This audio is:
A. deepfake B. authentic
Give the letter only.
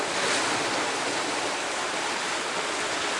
B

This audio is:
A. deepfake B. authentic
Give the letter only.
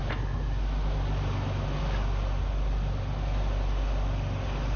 B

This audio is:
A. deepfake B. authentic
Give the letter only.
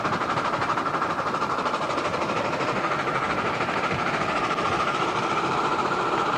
A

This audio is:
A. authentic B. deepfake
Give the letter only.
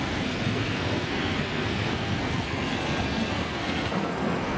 B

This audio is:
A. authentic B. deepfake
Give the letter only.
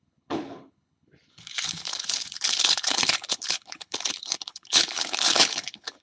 B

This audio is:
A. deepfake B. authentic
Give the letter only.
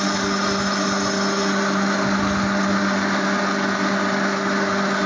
B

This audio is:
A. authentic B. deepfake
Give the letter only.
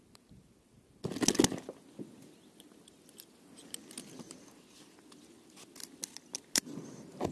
A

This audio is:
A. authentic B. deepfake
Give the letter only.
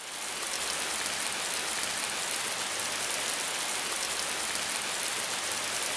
A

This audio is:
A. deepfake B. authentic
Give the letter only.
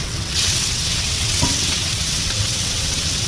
A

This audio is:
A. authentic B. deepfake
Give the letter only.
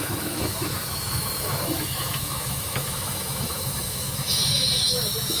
B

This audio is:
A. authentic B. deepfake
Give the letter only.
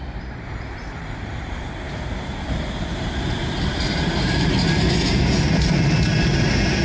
B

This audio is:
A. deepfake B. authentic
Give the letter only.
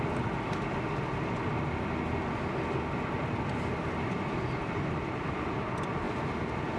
B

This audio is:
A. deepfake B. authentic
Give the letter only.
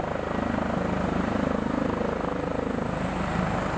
B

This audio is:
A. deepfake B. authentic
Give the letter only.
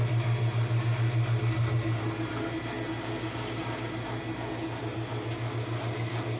B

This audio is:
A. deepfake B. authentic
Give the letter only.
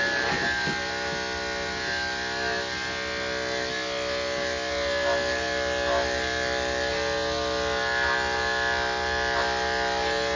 B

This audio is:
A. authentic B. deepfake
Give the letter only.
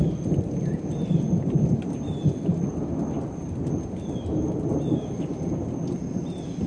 A